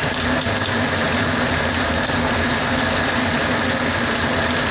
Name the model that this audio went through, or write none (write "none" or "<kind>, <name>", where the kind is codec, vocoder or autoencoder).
none